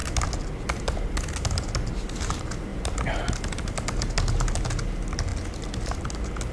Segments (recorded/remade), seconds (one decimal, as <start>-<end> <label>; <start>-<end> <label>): 0.0-6.5 recorded